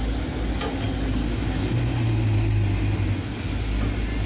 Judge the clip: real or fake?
real